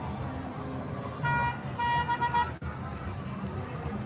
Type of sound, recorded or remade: recorded